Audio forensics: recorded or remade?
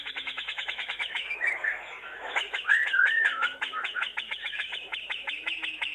remade